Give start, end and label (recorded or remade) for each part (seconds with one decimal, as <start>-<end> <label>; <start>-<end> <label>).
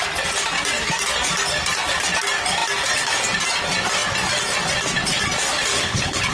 0.0-5.7 recorded; 5.7-6.3 remade